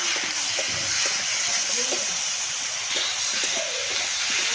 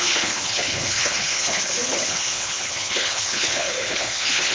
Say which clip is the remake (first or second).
second